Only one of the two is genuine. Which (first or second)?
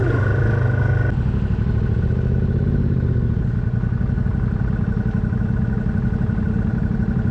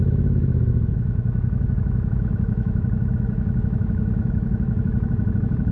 first